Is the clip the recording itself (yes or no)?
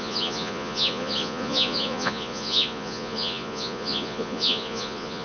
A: no